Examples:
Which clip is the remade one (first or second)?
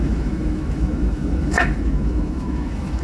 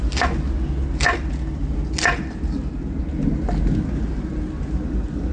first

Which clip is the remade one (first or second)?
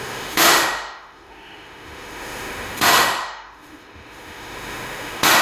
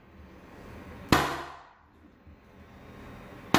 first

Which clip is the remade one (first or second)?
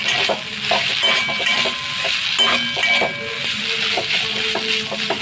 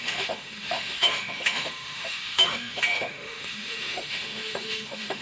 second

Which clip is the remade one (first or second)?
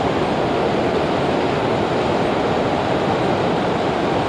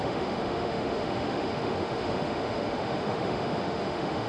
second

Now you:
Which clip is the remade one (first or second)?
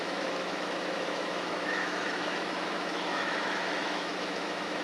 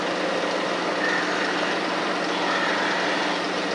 first